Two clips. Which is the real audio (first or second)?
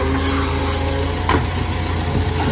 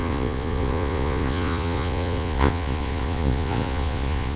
first